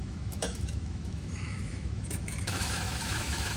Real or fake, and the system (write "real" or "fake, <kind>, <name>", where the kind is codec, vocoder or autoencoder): fake, autoencoder, DAC-VAE